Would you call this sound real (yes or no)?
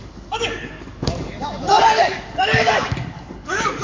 no